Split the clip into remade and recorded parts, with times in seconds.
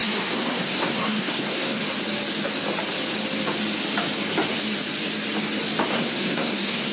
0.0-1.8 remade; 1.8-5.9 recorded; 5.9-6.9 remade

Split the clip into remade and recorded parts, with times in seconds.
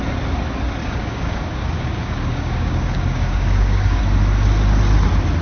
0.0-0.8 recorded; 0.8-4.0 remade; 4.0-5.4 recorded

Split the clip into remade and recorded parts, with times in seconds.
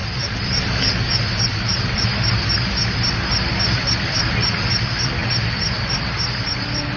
0.0-2.3 remade; 2.3-7.0 recorded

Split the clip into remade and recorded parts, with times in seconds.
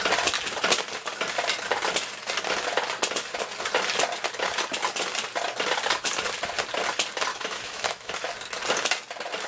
0.0-7.3 recorded; 7.3-8.1 remade; 8.1-9.5 recorded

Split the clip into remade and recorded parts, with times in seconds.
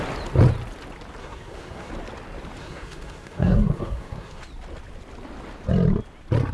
0.0-1.2 recorded; 1.2-1.9 remade; 1.9-2.6 recorded; 2.6-4.4 remade; 4.4-6.5 recorded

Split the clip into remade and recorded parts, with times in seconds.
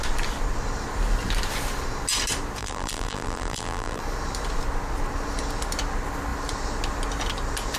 0.0-2.6 recorded; 2.6-4.0 remade; 4.0-7.8 recorded